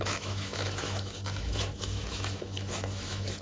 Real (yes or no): no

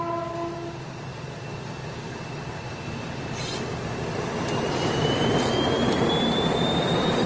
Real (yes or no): yes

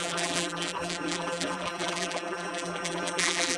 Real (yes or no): no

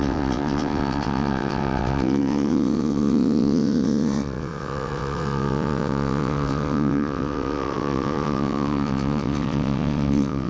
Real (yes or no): no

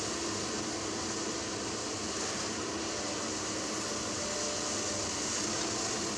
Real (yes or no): yes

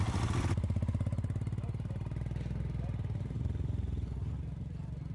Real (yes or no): yes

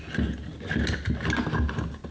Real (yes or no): yes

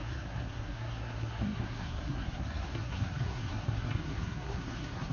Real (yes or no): no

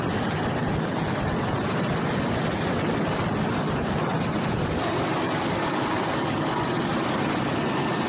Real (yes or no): yes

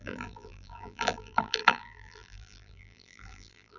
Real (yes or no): no